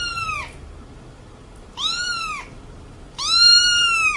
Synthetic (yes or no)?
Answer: yes